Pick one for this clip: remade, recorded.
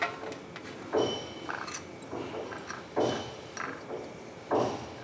recorded